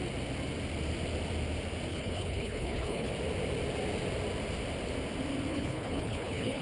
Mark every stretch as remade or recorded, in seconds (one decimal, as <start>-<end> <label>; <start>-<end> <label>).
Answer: 0.0-1.9 recorded; 1.9-3.1 remade; 3.1-5.5 recorded; 5.5-6.6 remade